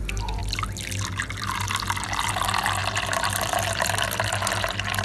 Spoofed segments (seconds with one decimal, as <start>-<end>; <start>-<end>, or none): none